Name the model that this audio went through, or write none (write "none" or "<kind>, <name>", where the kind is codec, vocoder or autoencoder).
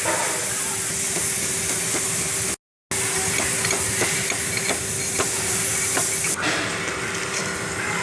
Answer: none